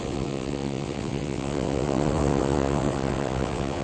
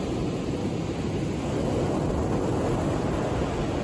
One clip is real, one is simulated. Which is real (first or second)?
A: second